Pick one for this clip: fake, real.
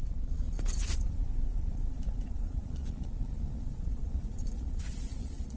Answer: fake